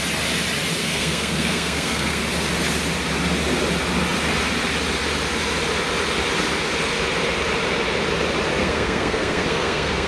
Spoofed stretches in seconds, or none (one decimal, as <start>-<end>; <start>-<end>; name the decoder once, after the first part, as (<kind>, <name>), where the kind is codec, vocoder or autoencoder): 0.8-2.2 (codec, SNAC); 8.6-10.1